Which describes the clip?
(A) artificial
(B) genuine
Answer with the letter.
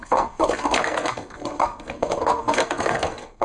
A